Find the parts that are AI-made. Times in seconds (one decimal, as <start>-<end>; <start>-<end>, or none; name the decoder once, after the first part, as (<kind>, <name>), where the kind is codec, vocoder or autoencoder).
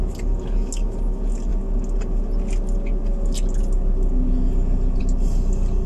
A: none